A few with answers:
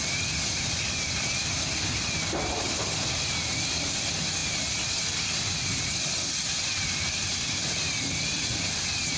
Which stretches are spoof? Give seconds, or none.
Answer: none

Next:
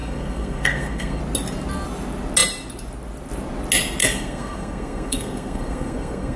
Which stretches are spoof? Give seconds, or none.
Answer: 0.0-1.2 (codec, SNAC); 4.0-6.4